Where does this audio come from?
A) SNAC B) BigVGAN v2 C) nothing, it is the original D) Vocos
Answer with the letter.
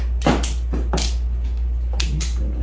C